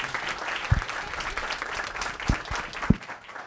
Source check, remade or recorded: recorded